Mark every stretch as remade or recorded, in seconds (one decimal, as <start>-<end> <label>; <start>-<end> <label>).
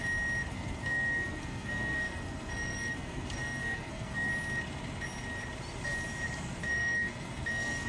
0.0-0.5 recorded; 0.5-4.3 remade; 4.3-6.6 recorded; 6.6-7.9 remade